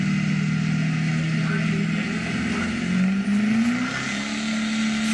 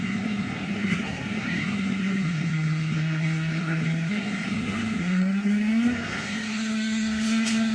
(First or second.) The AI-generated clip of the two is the second